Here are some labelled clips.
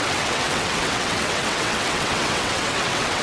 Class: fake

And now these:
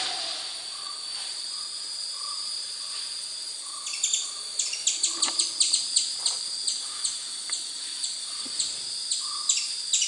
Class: real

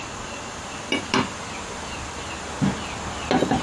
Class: real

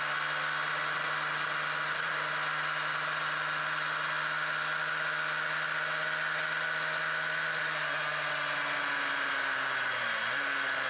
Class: real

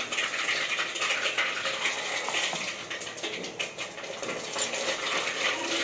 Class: real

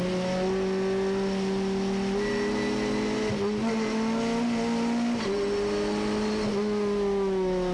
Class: real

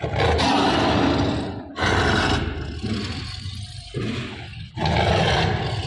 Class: real